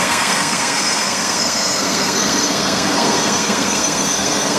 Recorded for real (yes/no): no